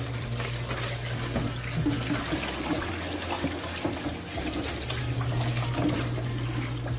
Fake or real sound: real